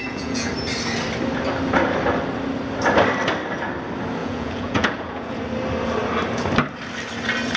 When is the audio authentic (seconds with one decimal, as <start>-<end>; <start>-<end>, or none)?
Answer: 0.5-4.2; 5.4-7.6